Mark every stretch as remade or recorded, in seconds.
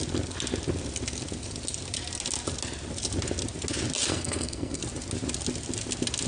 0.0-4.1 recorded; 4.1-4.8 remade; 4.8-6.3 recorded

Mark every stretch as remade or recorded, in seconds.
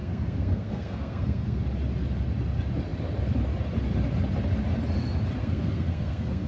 0.0-1.6 remade; 1.6-5.4 recorded; 5.4-6.5 remade